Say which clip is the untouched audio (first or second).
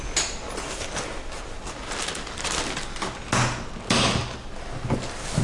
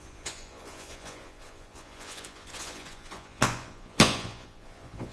first